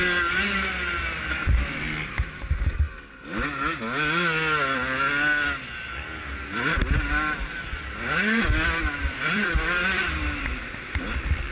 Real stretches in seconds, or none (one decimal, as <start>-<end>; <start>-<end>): 0.0-9.0